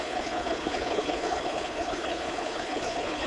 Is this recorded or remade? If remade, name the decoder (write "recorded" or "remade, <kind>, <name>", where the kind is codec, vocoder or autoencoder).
remade, codec, HILCodec